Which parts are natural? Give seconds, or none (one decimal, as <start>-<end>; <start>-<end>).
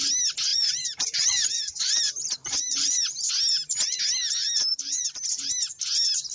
0.0-0.5; 3.3-4.7; 5.5-6.3